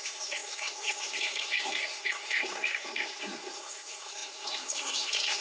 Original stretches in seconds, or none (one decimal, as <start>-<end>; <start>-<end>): none

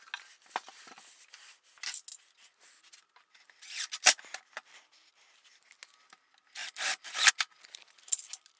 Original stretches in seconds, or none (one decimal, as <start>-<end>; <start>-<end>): 0.0-8.6

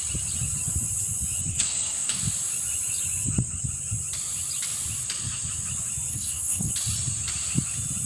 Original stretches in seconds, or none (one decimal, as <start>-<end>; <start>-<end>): 0.0-1.5; 2.2-6.1; 6.7-8.1

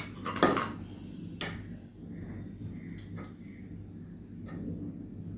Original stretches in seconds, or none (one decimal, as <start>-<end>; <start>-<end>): 0.0-5.4